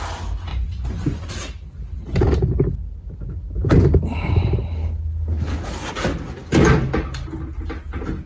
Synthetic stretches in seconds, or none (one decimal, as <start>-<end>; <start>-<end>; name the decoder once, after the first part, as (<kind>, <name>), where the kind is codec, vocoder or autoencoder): 0.5-1.3 (vocoder, Vocos)